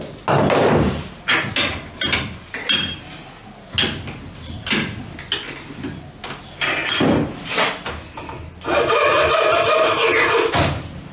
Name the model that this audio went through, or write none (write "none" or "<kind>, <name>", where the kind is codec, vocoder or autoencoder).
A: none